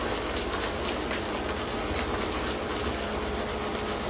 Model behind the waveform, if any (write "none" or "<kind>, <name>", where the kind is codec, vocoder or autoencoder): none